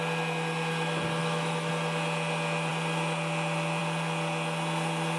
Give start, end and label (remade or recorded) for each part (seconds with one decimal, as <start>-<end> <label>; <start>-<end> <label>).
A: 0.0-1.2 recorded; 1.2-1.7 remade; 1.7-5.2 recorded